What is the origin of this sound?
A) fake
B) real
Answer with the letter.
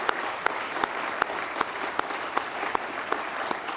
B